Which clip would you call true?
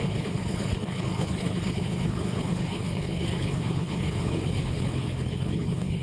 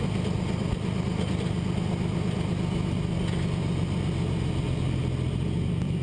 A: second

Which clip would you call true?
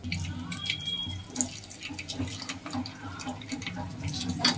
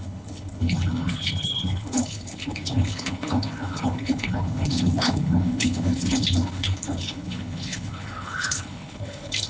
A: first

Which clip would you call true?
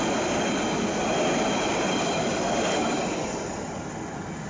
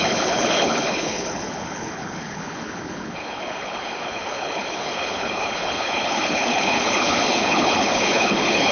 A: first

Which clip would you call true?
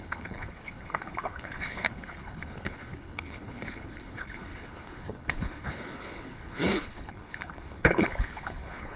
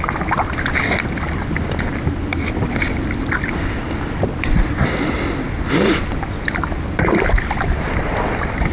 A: second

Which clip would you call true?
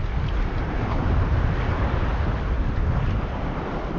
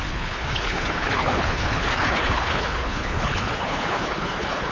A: first